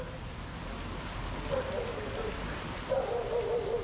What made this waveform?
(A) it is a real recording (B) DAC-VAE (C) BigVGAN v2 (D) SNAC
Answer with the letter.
A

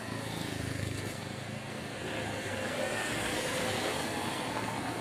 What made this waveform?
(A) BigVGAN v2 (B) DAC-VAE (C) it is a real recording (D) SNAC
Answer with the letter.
D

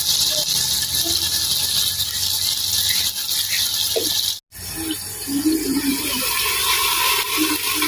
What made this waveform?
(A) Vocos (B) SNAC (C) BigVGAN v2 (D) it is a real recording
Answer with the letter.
D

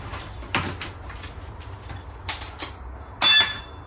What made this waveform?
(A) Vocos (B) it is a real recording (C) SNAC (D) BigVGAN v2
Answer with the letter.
B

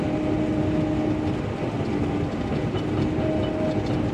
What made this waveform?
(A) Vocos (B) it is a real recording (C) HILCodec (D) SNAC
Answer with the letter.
B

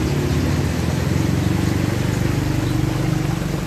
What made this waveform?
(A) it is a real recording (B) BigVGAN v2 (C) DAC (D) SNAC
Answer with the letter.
A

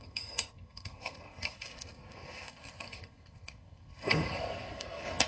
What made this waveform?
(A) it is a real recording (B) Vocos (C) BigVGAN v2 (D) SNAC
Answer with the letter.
D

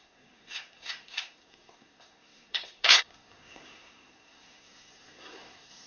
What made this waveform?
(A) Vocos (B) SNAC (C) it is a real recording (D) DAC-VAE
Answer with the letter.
B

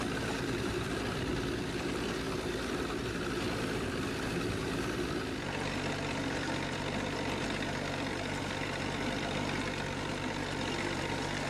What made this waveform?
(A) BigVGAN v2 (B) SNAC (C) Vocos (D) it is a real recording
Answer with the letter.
D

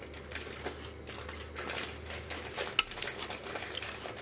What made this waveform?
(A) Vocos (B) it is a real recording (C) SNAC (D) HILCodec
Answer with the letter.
B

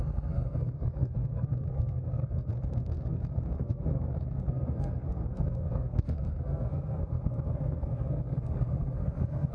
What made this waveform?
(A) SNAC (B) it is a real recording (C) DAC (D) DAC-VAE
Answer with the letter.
A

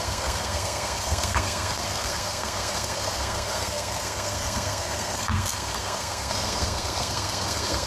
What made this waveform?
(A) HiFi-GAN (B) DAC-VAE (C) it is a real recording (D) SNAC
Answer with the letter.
D